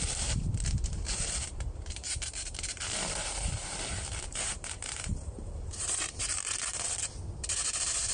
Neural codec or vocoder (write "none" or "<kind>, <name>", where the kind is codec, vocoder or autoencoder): vocoder, BigVGAN v2